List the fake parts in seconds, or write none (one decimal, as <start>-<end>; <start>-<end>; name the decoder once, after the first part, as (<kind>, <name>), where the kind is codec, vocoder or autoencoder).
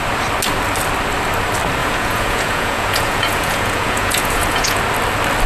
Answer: 1.8-4.8 (vocoder, Vocos)